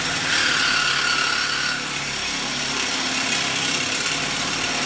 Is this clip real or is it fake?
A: fake